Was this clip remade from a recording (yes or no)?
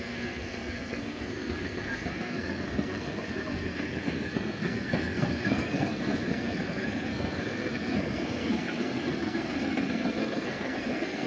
yes